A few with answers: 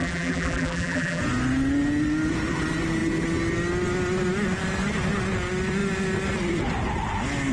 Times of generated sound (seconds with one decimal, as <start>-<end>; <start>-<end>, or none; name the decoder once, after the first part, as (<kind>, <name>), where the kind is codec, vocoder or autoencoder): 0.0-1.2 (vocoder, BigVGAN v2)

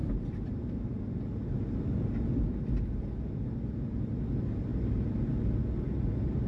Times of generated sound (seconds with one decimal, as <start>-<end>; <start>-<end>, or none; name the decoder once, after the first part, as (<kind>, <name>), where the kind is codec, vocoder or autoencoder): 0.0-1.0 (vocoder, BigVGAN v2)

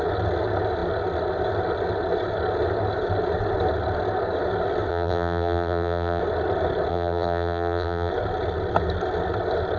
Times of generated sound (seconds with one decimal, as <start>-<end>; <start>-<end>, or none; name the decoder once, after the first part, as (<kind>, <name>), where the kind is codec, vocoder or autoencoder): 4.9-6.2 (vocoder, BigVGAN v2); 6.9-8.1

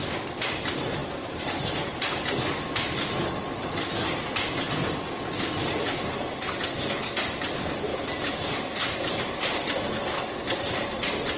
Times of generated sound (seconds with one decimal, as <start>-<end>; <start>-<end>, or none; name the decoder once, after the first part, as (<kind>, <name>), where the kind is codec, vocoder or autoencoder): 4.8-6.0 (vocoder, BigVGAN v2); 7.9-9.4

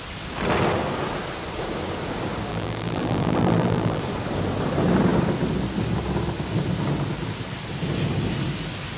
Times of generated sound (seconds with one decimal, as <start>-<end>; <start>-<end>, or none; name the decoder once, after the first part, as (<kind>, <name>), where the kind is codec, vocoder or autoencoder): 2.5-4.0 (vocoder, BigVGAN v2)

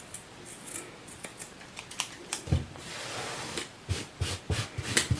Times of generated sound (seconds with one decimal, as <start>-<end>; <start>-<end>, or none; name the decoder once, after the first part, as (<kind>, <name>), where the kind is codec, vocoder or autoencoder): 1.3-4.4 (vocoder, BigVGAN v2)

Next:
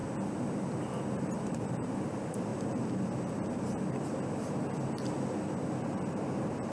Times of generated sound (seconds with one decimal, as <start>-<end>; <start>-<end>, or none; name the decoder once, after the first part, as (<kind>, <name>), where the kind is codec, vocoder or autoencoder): 1.5-2.5 (vocoder, BigVGAN v2); 5.8-6.7

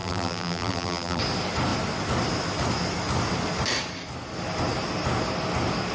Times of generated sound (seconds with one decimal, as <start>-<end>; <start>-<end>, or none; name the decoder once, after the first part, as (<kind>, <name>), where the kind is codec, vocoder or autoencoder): 0.0-1.2 (vocoder, BigVGAN v2)